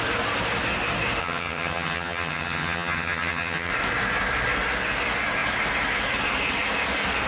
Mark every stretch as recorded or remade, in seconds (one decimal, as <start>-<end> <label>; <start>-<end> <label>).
0.0-1.2 recorded; 1.2-3.7 remade; 3.7-7.3 recorded